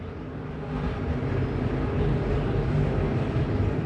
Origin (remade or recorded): recorded